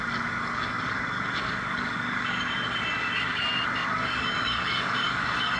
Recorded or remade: remade